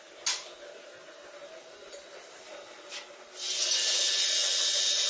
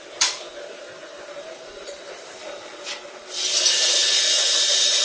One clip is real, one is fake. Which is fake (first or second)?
second